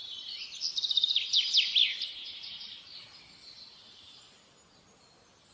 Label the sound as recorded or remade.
recorded